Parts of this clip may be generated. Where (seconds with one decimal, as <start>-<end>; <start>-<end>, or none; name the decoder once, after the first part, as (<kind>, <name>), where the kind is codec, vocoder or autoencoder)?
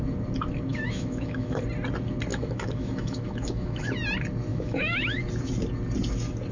0.7-1.6 (autoencoder, DAC-VAE); 2.3-3.9; 4.5-5.2